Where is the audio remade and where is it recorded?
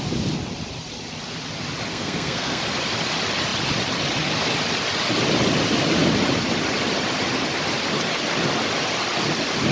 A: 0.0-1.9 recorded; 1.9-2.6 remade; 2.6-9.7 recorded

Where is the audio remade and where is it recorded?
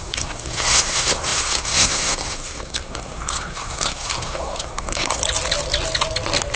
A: 0.0-5.2 remade; 5.2-6.6 recorded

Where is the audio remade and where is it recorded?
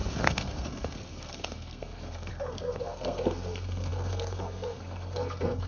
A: 0.0-5.7 remade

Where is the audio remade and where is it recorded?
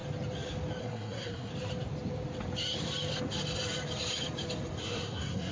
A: 0.0-0.8 recorded; 0.8-1.5 remade; 1.5-4.8 recorded; 4.8-5.5 remade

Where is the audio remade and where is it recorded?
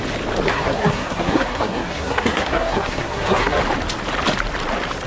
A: 0.0-0.5 recorded; 0.5-3.6 remade; 3.6-5.1 recorded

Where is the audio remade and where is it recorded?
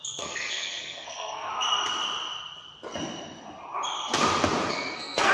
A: 0.0-1.5 remade; 1.5-4.7 recorded; 4.7-5.3 remade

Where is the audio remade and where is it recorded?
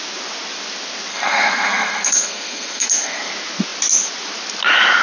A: 0.0-1.1 recorded; 1.1-3.3 remade; 3.3-5.0 recorded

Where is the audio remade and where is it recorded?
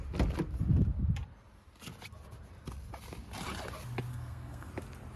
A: 0.0-4.1 recorded; 4.1-4.7 remade; 4.7-5.2 recorded